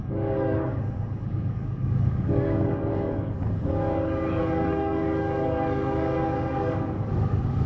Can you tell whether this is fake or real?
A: fake